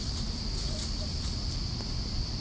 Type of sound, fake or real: real